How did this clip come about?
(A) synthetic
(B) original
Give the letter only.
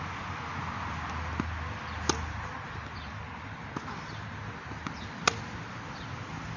B